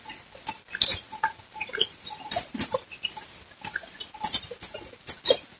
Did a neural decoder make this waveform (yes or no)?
no